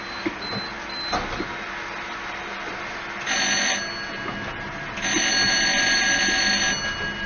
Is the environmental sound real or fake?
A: real